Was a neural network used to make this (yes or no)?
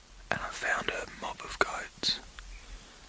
no